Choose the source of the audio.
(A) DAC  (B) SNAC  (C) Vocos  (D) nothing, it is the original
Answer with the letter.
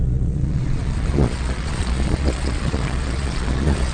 C